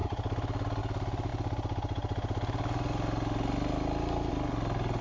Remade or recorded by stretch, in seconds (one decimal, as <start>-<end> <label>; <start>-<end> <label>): 0.0-1.3 remade; 1.3-4.3 recorded; 4.3-5.0 remade